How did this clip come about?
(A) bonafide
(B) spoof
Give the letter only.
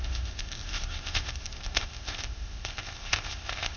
B